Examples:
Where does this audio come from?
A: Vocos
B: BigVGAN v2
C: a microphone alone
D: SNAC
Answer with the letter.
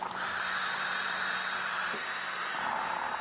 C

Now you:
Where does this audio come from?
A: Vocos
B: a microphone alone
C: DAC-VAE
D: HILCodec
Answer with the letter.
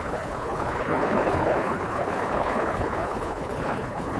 D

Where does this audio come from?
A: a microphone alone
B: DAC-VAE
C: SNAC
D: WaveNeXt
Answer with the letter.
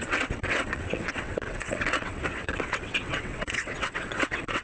D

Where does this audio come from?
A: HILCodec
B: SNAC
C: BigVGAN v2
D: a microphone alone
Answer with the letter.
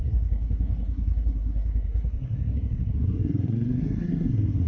B